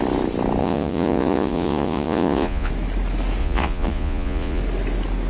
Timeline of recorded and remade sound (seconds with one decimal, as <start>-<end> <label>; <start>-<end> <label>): 0.0-0.6 recorded; 0.6-2.7 remade; 2.7-3.4 recorded; 3.4-4.6 remade; 4.6-5.3 recorded

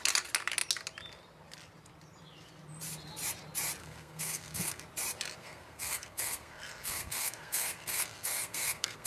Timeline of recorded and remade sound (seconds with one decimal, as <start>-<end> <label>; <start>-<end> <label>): 0.0-3.8 recorded; 3.8-4.8 remade; 4.8-5.4 recorded; 5.4-9.1 remade

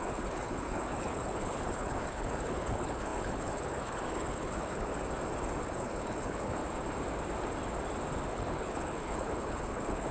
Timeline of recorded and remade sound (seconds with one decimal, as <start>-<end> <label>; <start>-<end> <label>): 0.0-4.9 remade; 4.9-5.6 recorded; 5.6-6.6 remade; 6.6-8.3 recorded; 8.3-10.1 remade

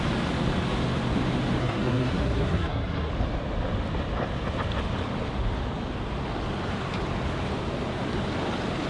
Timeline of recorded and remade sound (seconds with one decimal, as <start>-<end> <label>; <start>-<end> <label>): 0.0-1.6 recorded; 1.6-3.1 remade; 3.1-8.9 recorded

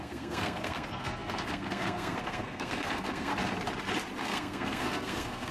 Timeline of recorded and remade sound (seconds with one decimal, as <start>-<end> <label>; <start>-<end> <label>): 0.0-3.3 remade; 3.3-4.2 recorded; 4.2-5.5 remade

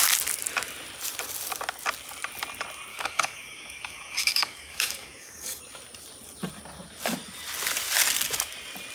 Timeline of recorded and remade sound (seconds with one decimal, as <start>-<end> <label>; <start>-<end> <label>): 0.0-2.9 recorded; 2.9-5.6 remade; 5.6-8.9 recorded

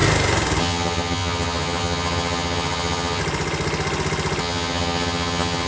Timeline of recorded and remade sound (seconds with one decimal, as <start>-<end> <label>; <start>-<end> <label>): 0.0-0.6 recorded; 0.6-3.2 remade; 3.2-4.4 recorded; 4.4-5.7 remade